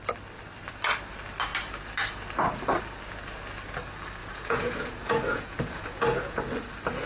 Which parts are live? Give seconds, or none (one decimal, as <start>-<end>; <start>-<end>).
0.0-4.2; 6.4-7.1